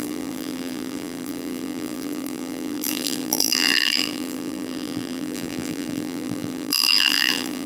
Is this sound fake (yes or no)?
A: yes